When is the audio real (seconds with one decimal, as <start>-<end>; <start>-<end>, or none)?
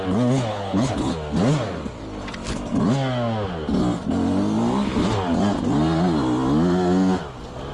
0.0-0.5; 1.1-7.7